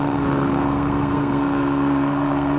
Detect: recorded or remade remade